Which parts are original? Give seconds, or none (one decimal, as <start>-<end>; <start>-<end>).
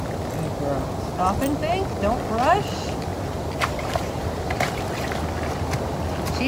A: 0.0-3.1; 5.2-6.5